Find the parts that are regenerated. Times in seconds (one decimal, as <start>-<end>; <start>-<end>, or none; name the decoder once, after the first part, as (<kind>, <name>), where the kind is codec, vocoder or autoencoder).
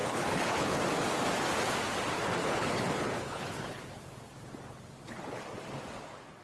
0.0-0.8 (codec, HILCodec); 2.4-3.9